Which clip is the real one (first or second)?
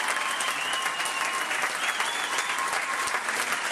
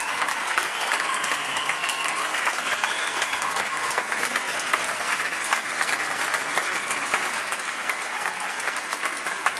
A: first